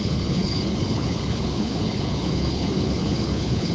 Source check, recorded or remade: remade